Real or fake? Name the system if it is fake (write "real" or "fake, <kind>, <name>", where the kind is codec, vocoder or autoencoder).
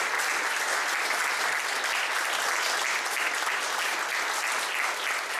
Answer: real